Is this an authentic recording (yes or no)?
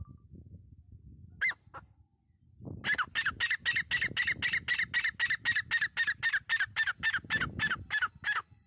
yes